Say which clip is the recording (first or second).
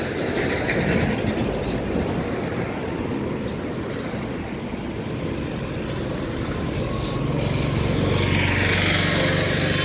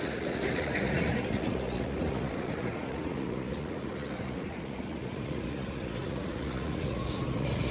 first